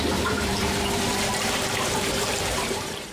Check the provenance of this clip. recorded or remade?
remade